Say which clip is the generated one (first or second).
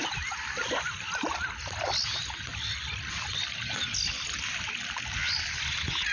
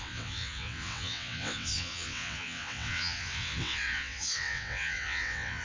second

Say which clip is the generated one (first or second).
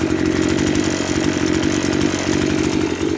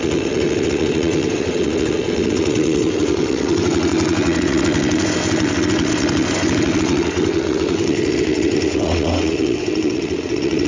second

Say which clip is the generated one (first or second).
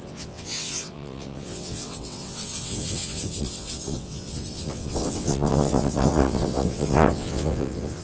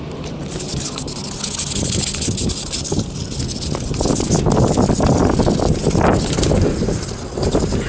first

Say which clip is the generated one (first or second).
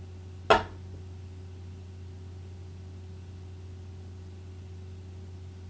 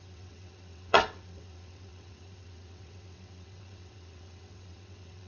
second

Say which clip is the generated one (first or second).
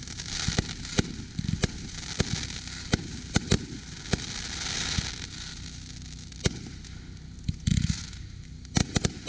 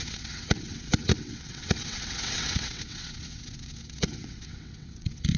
second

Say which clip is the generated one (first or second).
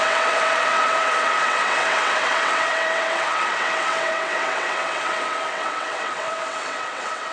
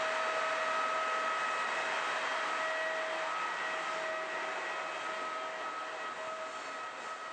first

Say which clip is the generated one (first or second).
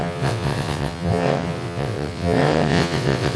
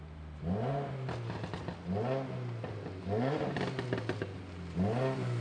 first